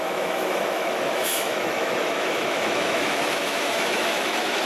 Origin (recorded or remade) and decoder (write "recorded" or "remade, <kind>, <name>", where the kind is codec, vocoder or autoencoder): remade, autoencoder, DAC-VAE